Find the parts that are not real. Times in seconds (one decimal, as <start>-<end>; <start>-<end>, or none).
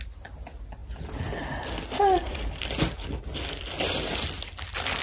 none